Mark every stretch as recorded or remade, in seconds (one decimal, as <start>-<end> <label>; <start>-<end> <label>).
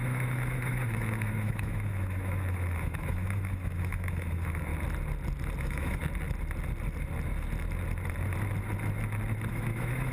0.0-4.7 remade; 4.7-5.6 recorded; 5.6-6.0 remade; 6.0-9.5 recorded; 9.5-10.1 remade